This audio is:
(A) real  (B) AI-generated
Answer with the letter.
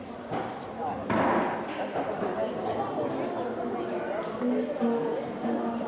A